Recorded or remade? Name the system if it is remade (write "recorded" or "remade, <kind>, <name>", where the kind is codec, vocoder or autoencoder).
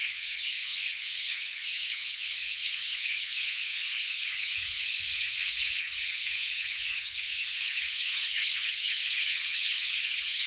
remade, codec, HILCodec